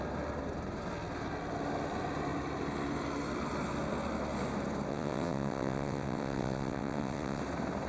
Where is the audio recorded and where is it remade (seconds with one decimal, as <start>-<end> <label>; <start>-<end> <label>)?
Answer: 0.0-4.9 recorded; 4.9-7.4 remade; 7.4-7.9 recorded